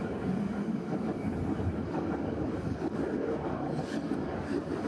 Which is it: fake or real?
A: fake